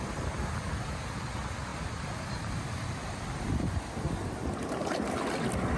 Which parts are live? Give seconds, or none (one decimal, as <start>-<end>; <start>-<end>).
0.0-1.7; 2.6-4.4; 5.1-5.8